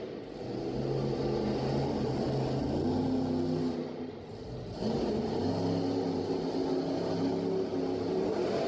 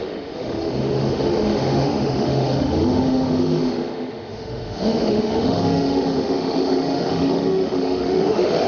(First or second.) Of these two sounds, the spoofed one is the second